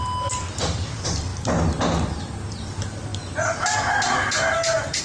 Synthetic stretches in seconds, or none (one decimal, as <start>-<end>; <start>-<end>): none